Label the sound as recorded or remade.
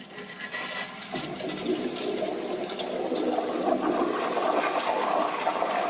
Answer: recorded